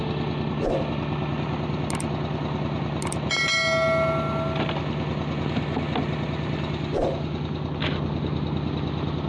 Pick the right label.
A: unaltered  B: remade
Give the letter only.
A